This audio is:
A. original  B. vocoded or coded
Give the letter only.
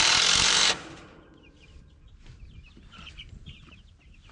B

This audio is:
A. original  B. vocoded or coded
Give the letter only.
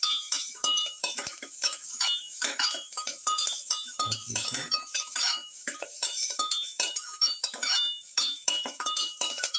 B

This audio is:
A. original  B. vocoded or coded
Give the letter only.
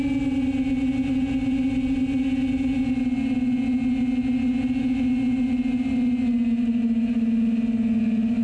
A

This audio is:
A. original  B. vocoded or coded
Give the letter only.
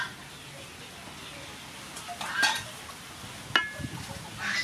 A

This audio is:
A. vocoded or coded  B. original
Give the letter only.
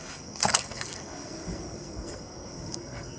A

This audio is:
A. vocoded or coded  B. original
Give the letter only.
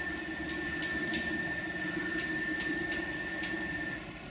A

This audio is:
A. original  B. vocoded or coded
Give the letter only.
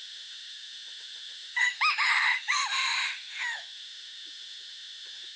B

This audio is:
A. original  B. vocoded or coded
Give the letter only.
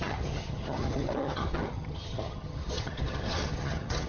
B